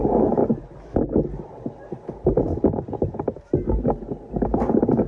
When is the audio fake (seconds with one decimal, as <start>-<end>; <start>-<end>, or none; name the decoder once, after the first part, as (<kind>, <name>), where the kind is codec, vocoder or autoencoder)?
none